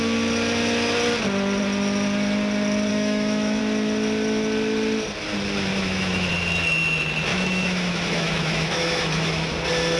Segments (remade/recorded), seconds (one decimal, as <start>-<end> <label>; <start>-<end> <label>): 0.0-2.9 recorded; 2.9-3.6 remade; 3.6-5.7 recorded; 5.7-6.3 remade; 6.3-7.3 recorded; 7.3-9.5 remade; 9.5-10.0 recorded